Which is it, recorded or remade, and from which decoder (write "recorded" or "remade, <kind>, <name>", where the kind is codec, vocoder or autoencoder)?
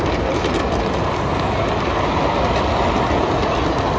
recorded